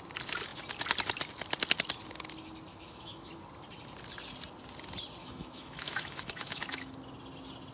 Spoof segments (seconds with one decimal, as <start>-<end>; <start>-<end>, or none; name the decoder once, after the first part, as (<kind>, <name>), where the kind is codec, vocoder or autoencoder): 2.7-3.3 (autoencoder, DAC-VAE); 5.2-6.9